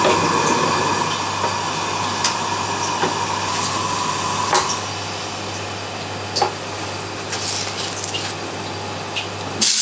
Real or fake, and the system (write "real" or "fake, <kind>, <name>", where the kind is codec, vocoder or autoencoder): real